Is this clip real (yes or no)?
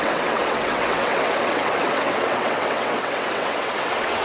no